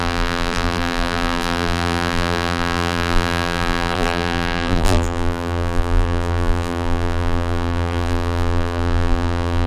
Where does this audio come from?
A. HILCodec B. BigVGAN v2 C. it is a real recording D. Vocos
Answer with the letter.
B